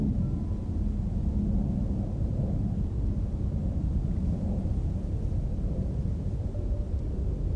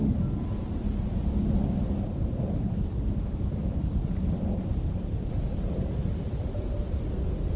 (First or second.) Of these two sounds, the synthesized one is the second